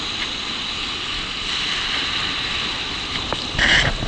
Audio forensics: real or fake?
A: real